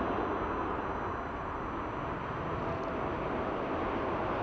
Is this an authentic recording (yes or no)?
yes